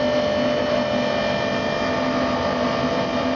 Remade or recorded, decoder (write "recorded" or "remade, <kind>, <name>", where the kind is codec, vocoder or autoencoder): recorded